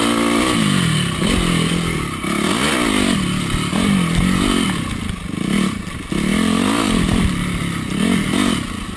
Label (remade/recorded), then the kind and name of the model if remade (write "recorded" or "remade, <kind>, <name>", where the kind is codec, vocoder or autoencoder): recorded